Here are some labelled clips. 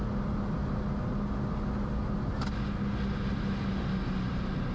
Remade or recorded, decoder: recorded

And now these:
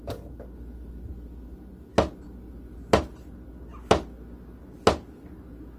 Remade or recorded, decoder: recorded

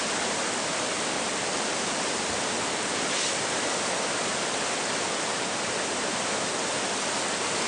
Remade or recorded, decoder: recorded